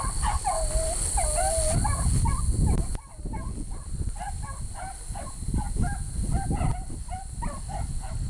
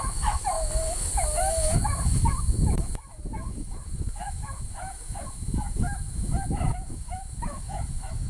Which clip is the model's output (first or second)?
second